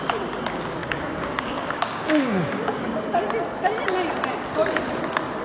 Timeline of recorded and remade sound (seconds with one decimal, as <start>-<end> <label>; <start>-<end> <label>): 0.0-0.8 recorded; 0.8-3.2 remade; 3.2-5.4 recorded

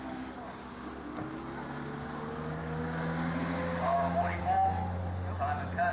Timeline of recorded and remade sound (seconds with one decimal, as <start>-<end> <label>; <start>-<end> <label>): 0.0-0.6 recorded; 0.6-1.4 remade; 1.4-2.6 recorded; 2.6-4.4 remade; 4.4-5.9 recorded

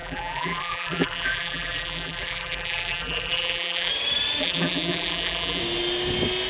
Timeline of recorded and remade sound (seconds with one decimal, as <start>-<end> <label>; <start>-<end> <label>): 0.0-3.9 remade; 3.9-4.4 recorded; 4.4-5.6 remade; 5.6-6.5 recorded